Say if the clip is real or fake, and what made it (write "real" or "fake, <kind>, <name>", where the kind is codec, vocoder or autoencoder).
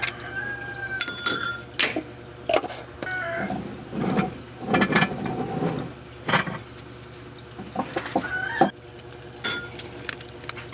real